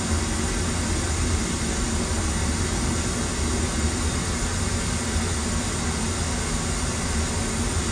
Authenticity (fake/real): real